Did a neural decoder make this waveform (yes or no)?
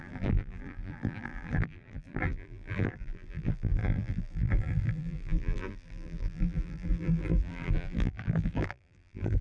yes